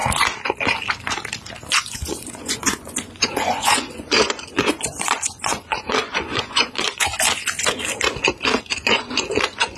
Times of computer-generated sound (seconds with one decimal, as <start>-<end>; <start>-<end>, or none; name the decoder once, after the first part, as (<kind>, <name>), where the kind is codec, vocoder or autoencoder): 1.7-7.1 (vocoder, Vocos); 8.7-9.8